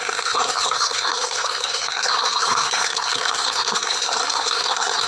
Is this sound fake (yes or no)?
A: yes